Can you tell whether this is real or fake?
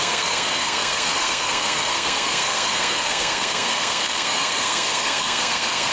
fake